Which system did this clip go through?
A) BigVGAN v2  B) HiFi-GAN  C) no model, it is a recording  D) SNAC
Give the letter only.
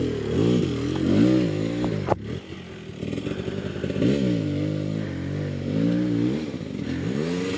C